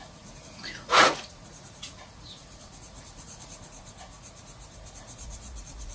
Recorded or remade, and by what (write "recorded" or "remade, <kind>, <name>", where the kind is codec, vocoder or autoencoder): remade, vocoder, Vocos